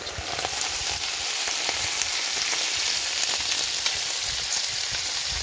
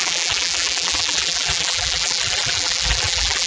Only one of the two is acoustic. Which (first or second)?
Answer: first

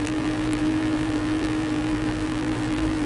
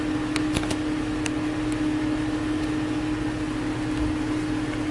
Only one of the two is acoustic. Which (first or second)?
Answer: second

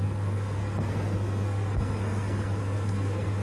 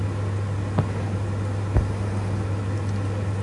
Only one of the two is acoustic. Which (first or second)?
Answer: second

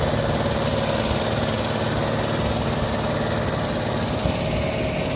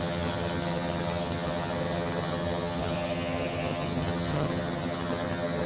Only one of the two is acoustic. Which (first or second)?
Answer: first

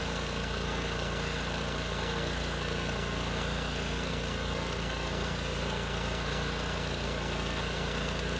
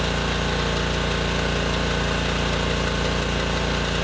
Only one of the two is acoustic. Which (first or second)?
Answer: second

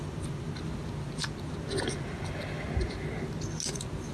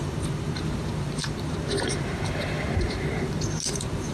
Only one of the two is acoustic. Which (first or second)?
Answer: first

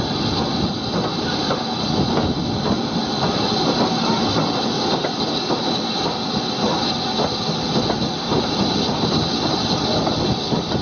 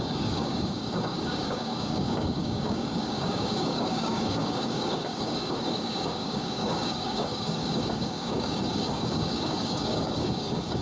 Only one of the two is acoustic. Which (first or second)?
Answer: first